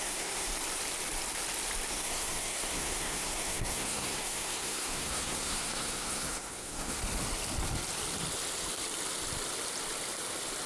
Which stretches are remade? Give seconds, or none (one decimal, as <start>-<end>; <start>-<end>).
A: 0.0-0.5; 1.9-7.0